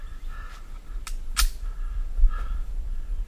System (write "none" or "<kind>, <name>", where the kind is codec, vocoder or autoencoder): none